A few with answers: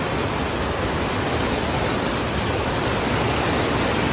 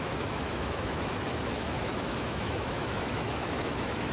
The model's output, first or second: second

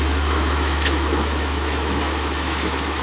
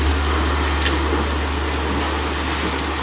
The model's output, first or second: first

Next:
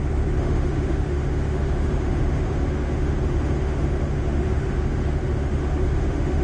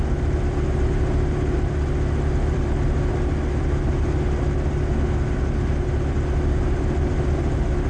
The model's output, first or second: first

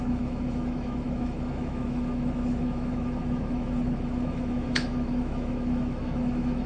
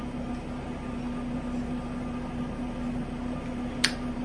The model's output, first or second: first